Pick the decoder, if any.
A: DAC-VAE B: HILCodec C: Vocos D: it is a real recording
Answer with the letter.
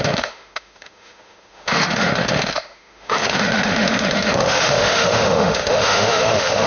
A